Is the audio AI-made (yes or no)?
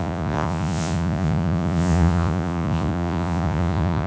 yes